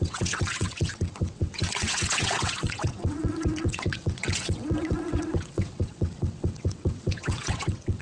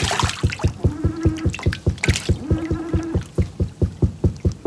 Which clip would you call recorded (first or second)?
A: second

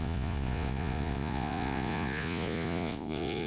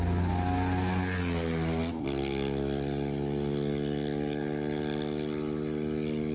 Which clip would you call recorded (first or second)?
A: second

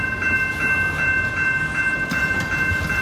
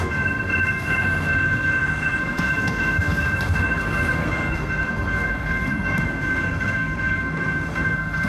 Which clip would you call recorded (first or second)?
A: first